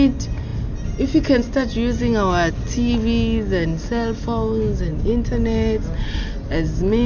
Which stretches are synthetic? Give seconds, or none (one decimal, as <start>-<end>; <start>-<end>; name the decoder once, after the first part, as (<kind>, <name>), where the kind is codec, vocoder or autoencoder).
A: none